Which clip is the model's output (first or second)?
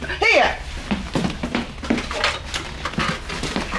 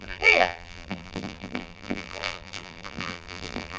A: second